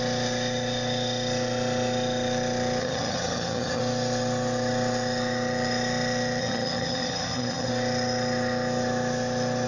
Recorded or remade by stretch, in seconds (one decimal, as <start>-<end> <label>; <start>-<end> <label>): 0.0-2.8 recorded; 2.8-3.8 remade; 3.8-6.4 recorded; 6.4-7.7 remade; 7.7-9.7 recorded

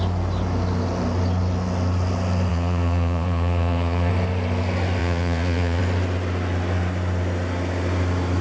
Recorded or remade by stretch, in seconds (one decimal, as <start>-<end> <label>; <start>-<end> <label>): 0.0-2.5 recorded; 2.5-4.1 remade; 4.1-5.0 recorded; 5.0-5.8 remade; 5.8-8.4 recorded

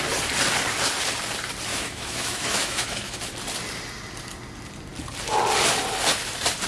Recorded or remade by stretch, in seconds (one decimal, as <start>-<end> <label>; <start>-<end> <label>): 0.0-1.7 recorded; 1.7-3.2 remade; 3.2-6.7 recorded